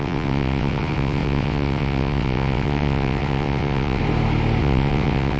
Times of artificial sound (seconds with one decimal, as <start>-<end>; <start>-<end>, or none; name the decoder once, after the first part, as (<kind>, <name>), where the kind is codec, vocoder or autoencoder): 0.0-4.0 (vocoder, WaveNeXt); 4.6-5.4